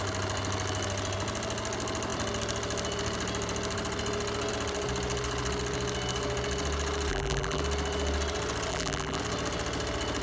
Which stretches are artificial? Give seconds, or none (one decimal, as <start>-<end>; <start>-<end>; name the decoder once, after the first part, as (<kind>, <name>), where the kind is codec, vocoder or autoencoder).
7.1-7.6 (vocoder, BigVGAN v2); 8.7-9.2